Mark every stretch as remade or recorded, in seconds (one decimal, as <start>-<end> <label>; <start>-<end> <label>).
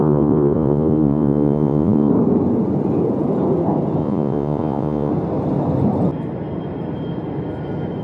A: 0.0-2.1 remade; 2.1-4.0 recorded; 4.0-5.1 remade; 5.1-8.0 recorded